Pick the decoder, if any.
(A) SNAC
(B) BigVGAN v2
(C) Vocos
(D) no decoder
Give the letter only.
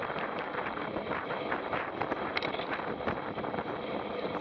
D